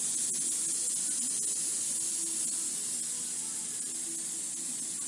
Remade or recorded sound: recorded